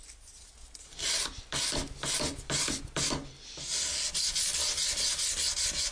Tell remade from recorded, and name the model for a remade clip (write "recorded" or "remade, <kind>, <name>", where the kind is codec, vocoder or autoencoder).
recorded